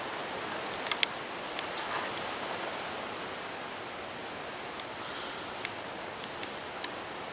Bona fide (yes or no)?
yes